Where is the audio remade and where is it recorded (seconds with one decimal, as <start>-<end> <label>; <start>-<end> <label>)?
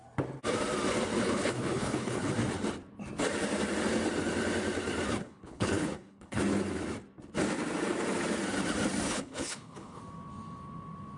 0.0-1.2 recorded; 1.2-2.3 remade; 2.3-5.2 recorded; 5.2-6.4 remade; 6.4-9.1 recorded; 9.1-10.0 remade; 10.0-11.2 recorded